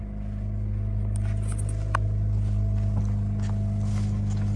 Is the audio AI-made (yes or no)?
no